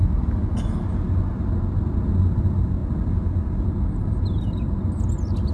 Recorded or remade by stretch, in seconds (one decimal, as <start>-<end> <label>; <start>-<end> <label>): 0.0-5.5 recorded